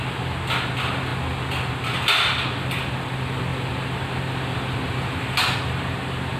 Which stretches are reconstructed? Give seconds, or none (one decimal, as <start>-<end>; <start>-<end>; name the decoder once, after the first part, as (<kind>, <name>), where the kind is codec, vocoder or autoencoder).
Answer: 3.5-4.2 (vocoder, BigVGAN v2)